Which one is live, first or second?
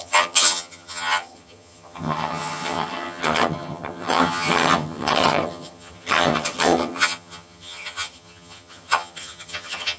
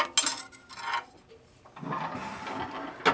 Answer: second